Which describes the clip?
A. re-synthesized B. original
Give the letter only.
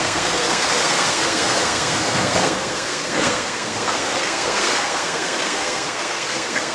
A